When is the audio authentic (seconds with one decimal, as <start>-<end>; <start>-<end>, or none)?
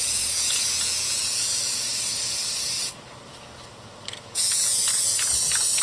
1.9-4.1